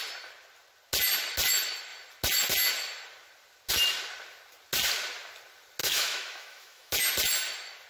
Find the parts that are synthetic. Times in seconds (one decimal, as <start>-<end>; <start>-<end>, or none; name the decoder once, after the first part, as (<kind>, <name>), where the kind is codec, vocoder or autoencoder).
5.8-7.0 (autoencoder, DAC-VAE)